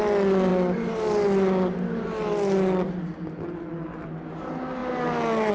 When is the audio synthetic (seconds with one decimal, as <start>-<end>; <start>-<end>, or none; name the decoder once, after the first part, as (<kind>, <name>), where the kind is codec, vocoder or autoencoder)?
none